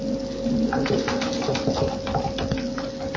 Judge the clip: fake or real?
real